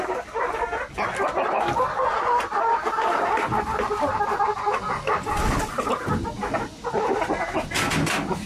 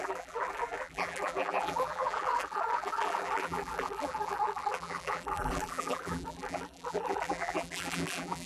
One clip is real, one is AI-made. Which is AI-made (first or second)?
second